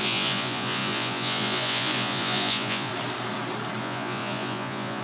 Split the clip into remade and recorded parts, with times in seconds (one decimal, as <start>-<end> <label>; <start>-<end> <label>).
0.0-2.9 remade; 2.9-3.8 recorded; 3.8-5.0 remade